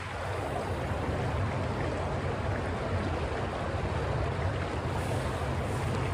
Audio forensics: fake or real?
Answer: real